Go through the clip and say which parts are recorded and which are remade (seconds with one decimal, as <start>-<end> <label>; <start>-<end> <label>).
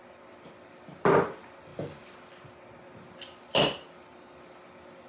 0.0-5.1 recorded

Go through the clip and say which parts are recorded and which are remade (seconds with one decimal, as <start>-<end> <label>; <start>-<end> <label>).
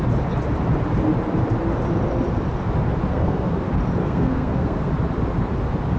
0.0-3.1 recorded; 3.1-3.6 remade; 3.6-4.0 recorded; 4.0-4.9 remade; 4.9-6.0 recorded